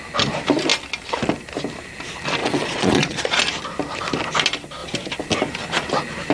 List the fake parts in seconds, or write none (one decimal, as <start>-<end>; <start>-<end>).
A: 2.4-3.4